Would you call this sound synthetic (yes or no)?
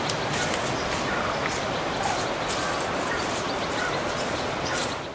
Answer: no